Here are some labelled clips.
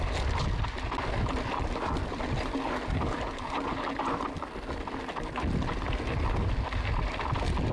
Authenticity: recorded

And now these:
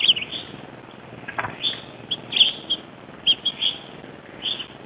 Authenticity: recorded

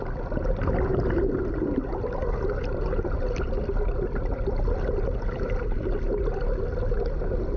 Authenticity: recorded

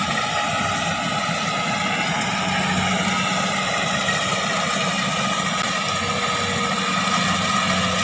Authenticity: recorded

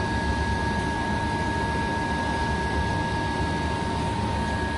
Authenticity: recorded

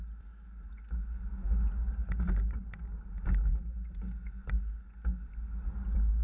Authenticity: recorded